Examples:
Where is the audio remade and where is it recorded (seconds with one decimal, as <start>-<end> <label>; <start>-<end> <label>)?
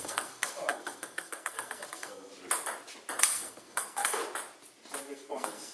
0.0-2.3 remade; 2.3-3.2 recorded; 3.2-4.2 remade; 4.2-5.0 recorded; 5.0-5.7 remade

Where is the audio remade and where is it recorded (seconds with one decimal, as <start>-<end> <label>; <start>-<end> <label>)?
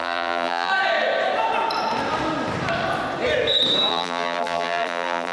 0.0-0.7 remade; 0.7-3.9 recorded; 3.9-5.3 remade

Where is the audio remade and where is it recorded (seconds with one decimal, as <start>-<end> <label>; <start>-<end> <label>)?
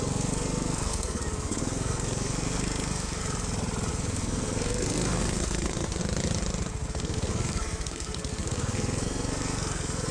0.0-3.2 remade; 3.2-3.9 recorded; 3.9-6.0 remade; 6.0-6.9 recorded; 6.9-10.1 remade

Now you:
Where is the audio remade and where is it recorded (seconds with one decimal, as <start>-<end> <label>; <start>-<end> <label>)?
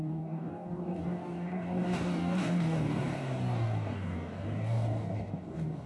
0.0-5.9 remade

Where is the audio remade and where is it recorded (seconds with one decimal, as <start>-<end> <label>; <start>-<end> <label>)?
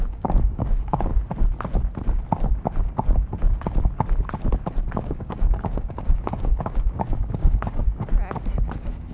0.0-1.1 remade; 1.1-4.9 recorded; 4.9-7.8 remade; 7.8-8.6 recorded; 8.6-9.1 remade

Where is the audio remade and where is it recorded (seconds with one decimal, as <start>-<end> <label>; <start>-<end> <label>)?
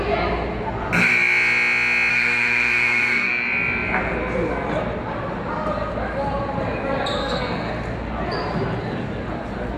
0.0-2.1 recorded; 2.1-3.3 remade; 3.3-7.2 recorded; 7.2-7.7 remade; 7.7-9.8 recorded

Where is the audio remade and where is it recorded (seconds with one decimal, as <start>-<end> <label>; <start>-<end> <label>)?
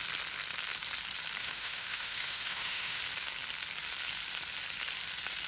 0.0-1.4 recorded; 1.4-3.0 remade; 3.0-5.5 recorded